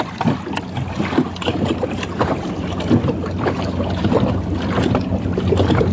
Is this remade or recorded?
recorded